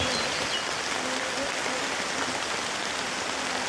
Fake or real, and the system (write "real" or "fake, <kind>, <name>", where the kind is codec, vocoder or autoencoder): real